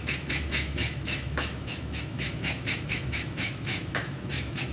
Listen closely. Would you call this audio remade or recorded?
remade